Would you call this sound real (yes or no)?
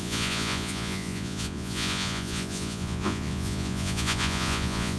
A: no